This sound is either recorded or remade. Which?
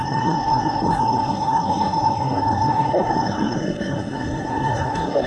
remade